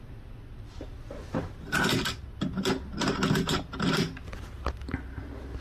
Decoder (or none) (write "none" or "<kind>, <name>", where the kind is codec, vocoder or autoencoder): none